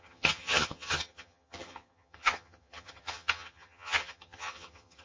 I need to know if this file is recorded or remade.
remade